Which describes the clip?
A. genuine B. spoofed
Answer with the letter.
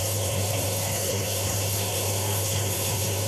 B